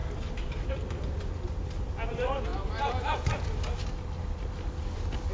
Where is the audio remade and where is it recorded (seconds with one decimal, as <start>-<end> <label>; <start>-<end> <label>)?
0.0-5.3 recorded

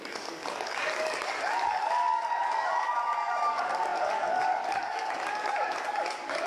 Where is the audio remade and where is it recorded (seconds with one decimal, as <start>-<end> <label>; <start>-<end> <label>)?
0.0-6.5 remade